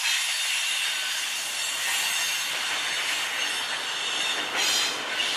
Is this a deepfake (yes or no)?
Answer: no